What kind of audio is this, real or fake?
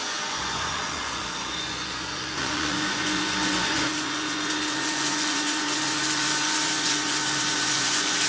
fake